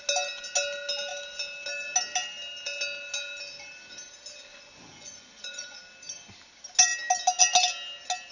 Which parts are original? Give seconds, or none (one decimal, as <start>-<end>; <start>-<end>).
0.0-4.5; 5.8-8.3

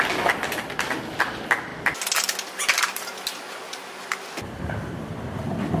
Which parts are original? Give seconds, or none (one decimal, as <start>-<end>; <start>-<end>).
0.0-5.8

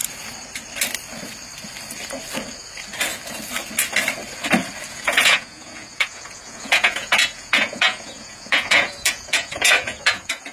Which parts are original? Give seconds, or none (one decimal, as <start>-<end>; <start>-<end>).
0.0-4.9

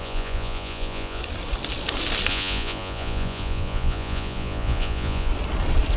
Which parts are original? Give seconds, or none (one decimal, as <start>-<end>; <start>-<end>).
1.2-2.3; 5.3-6.0